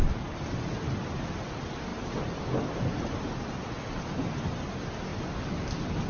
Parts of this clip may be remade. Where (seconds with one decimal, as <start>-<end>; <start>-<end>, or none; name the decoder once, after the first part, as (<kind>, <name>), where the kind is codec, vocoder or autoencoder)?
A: none